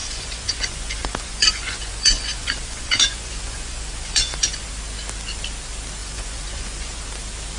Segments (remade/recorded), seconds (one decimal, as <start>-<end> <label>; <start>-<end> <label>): 0.0-4.6 remade; 4.6-6.0 recorded; 6.0-7.0 remade; 7.0-7.6 recorded